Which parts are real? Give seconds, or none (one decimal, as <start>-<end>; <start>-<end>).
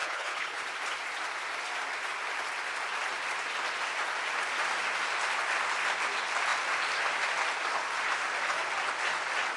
0.6-9.6